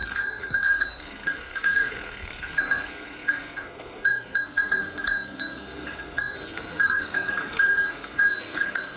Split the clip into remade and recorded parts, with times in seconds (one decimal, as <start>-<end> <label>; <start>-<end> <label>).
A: 0.0-9.0 remade